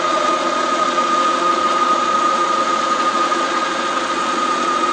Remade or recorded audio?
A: remade